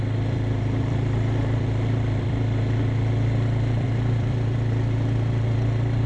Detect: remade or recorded remade